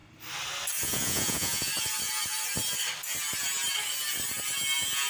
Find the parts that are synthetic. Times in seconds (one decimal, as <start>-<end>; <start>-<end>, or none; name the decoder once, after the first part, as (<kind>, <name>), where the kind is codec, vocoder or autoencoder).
0.8-1.7 (vocoder, Vocos)